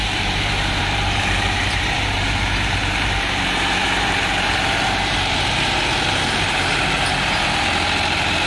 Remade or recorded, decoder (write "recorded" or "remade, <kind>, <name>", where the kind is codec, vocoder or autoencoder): remade, vocoder, BigVGAN v2